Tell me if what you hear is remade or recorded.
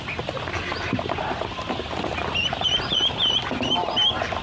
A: recorded